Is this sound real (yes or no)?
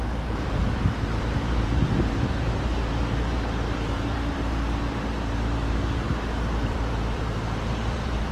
no